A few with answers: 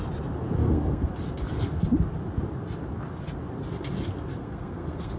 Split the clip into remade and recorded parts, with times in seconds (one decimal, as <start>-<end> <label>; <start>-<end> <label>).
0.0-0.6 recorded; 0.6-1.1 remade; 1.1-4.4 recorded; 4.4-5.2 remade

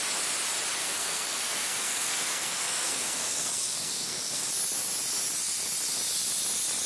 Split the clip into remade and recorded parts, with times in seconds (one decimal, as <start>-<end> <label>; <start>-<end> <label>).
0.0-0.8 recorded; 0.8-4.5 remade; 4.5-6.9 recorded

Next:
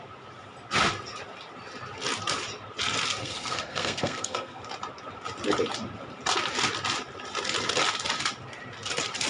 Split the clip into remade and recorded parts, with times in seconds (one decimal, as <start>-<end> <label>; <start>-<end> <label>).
0.0-3.2 recorded; 3.2-4.6 remade; 4.6-9.3 recorded

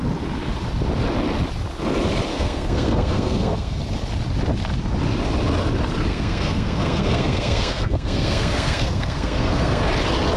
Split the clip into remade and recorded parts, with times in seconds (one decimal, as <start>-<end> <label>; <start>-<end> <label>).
0.0-2.3 recorded; 2.3-3.8 remade; 3.8-6.1 recorded; 6.1-9.8 remade; 9.8-10.4 recorded